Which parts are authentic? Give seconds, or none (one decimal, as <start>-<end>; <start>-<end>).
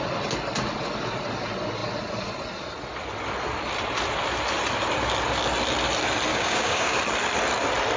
0.0-6.3; 7.0-8.0